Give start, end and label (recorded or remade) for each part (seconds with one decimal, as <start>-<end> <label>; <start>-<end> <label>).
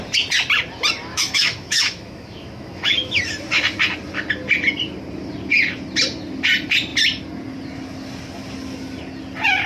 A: 0.0-1.1 recorded; 1.1-3.2 remade; 3.2-9.7 recorded